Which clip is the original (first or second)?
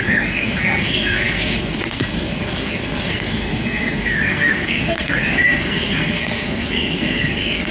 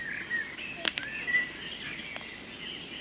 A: second